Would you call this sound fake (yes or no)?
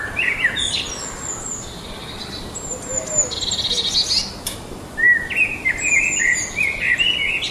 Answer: no